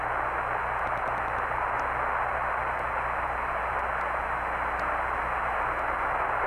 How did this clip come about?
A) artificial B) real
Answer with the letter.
B